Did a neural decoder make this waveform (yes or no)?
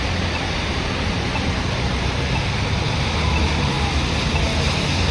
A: no